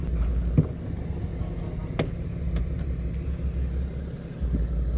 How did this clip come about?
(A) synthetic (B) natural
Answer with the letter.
B